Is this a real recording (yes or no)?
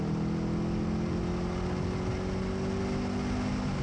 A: yes